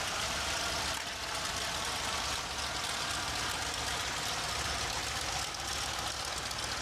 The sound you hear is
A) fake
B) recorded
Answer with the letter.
B